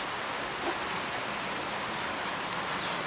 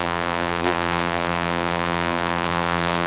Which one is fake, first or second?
second